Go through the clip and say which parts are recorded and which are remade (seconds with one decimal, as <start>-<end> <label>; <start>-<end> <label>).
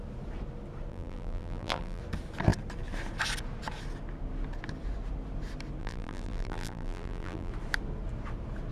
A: 0.0-0.9 recorded; 0.9-2.0 remade; 2.0-5.8 recorded; 5.8-7.5 remade; 7.5-8.7 recorded